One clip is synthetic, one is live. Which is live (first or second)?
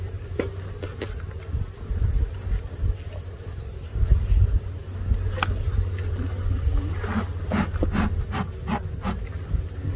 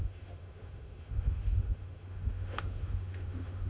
first